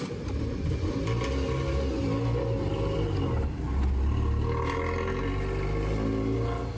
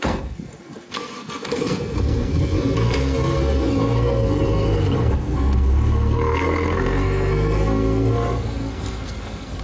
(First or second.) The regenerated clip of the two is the second